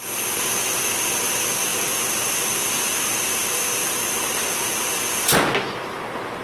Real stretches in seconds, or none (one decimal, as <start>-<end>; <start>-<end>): 0.0-6.4